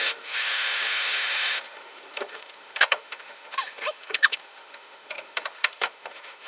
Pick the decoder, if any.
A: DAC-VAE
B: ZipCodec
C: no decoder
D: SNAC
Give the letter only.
A